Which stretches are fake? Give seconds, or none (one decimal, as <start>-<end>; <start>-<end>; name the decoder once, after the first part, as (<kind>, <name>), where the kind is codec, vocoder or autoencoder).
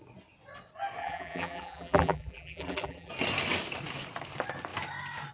1.0-3.1 (vocoder, BigVGAN v2)